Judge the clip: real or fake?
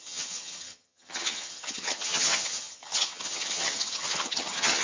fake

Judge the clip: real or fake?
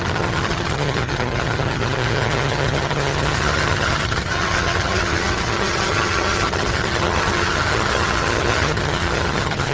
fake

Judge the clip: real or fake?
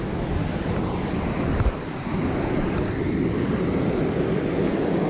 real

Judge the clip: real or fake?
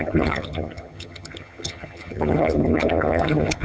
fake